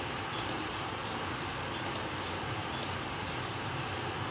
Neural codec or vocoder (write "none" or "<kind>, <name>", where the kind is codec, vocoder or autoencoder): none